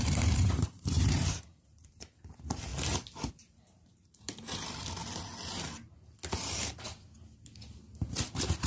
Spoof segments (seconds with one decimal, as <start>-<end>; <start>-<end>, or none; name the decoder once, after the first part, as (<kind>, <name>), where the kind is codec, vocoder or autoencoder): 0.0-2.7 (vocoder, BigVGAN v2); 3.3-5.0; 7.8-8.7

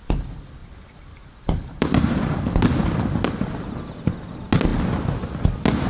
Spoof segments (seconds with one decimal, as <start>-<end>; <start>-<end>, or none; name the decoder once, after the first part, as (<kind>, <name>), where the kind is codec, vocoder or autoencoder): 0.6-3.9 (vocoder, BigVGAN v2)

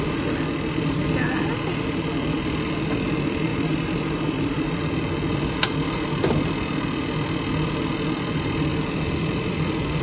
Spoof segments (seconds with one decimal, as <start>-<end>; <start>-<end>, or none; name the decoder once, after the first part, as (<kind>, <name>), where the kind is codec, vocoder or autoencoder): 3.5-4.8 (vocoder, BigVGAN v2); 8.7-9.5

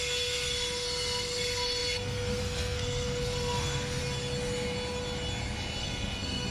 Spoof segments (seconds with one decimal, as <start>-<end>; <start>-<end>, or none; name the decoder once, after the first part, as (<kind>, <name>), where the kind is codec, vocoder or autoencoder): 0.0-4.0 (codec, SNAC); 5.8-6.5

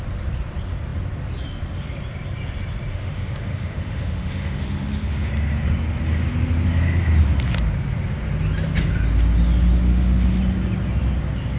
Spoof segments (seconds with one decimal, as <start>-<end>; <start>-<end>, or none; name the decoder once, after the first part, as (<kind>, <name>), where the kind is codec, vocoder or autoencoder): 2.9-5.3 (autoencoder, DAC-VAE); 9.9-10.4

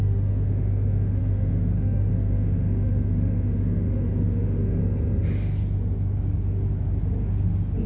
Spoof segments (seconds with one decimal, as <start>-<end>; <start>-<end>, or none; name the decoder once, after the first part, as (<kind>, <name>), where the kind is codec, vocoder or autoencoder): 0.0-4.8 (autoencoder, DAC-VAE)

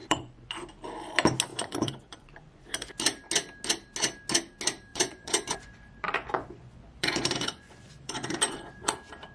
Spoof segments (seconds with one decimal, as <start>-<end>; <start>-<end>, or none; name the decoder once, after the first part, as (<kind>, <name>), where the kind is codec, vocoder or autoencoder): 0.0-0.7 (vocoder, Vocos); 1.5-2.9; 4.9-8.9

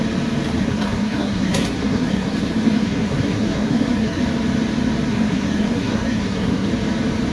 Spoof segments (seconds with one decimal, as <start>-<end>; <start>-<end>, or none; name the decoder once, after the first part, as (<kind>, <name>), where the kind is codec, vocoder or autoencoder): 0.6-4.2 (codec, SNAC); 5.1-6.7